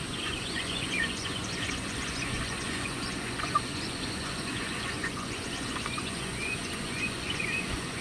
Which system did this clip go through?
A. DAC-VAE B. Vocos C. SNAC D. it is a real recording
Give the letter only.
B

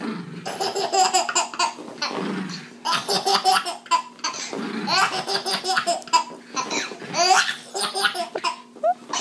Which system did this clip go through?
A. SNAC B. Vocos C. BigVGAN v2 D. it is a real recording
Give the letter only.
D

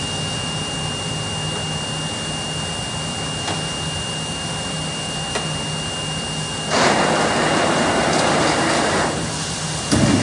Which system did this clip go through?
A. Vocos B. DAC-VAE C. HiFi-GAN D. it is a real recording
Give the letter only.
D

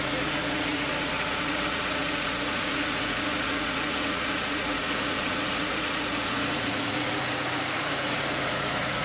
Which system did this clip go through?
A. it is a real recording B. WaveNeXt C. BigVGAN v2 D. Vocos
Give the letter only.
D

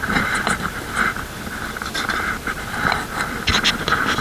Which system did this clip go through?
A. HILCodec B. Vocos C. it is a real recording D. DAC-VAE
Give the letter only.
C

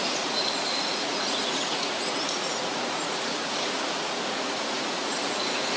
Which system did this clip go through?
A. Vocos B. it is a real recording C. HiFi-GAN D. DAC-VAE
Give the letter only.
A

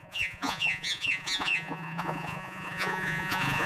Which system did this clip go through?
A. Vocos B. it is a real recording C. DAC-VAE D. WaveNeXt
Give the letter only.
A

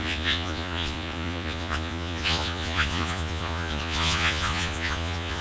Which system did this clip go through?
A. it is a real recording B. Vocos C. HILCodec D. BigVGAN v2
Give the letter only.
B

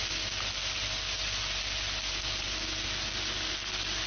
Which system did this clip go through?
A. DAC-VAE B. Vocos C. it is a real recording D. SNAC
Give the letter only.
C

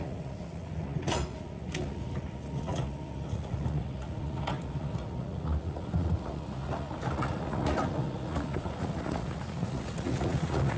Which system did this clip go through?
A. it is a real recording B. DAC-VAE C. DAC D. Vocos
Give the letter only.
D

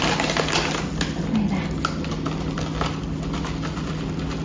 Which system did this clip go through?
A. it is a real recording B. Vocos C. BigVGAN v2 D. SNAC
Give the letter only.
A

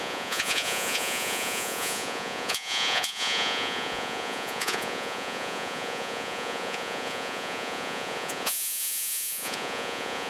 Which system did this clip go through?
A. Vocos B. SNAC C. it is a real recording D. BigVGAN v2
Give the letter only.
A